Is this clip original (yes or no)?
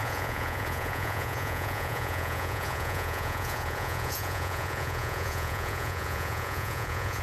no